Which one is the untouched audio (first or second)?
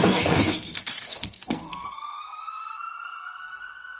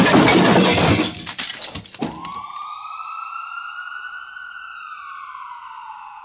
second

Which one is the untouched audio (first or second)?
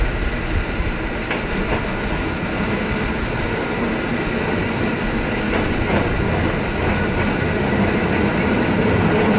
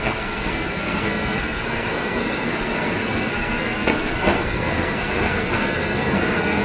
first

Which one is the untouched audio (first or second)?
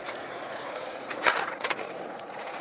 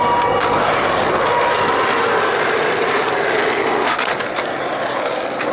second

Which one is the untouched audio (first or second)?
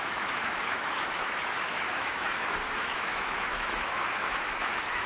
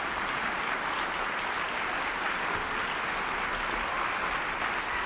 second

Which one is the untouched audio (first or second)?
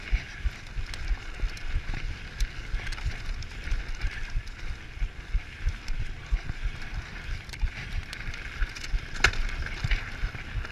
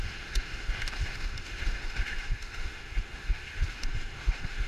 first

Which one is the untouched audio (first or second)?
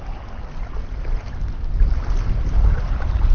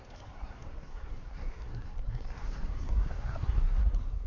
first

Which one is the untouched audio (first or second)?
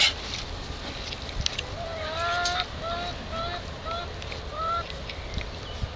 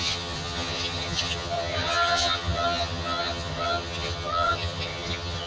first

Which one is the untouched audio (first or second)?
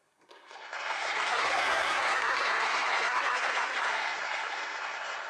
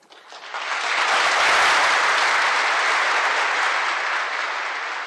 second